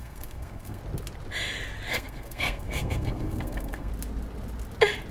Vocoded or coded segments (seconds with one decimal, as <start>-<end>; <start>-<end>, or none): 0.0-0.8; 1.9-3.9